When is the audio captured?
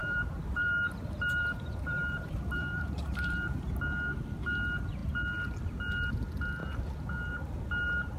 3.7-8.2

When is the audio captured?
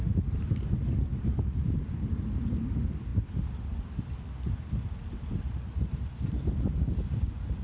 0.0-1.1; 1.8-7.6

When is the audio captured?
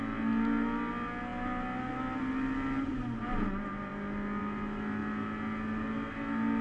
0.0-6.6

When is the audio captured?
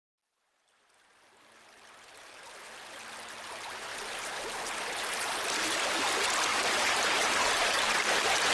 0.0-6.5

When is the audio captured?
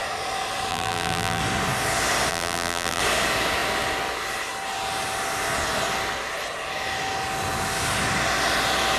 0.0-0.7; 1.4-2.3; 3.0-9.0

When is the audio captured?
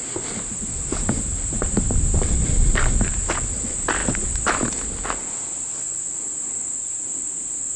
0.0-0.9; 3.3-7.8